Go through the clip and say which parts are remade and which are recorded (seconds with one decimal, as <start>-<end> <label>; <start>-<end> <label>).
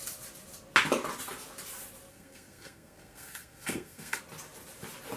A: 0.0-2.1 recorded; 2.1-4.2 remade; 4.2-5.2 recorded